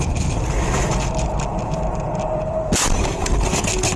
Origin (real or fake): real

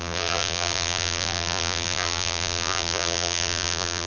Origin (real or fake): fake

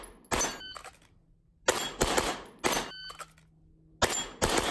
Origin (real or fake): real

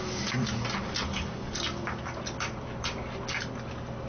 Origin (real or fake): real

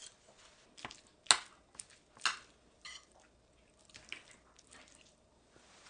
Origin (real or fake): real